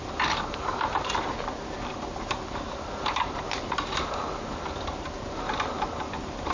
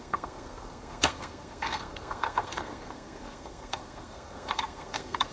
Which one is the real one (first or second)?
first